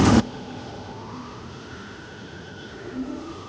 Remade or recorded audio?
remade